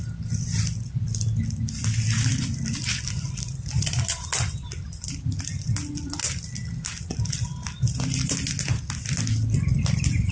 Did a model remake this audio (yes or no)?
no